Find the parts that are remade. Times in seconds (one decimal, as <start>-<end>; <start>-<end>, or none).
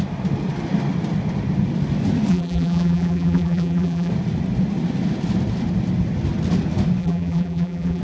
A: 2.3-4.1; 7.0-8.0